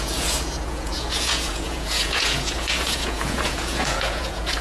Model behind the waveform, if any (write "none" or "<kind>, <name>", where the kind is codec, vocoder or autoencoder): vocoder, Vocos